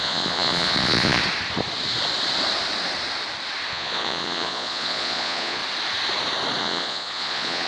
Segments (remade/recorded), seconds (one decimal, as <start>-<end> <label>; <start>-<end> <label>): 0.0-1.2 remade; 1.2-3.7 recorded; 3.7-5.6 remade; 5.6-6.6 recorded; 6.6-7.7 remade